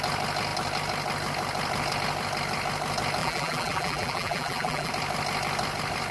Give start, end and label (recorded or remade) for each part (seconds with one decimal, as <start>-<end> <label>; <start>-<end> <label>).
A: 0.0-3.2 recorded; 3.2-4.9 remade; 4.9-6.1 recorded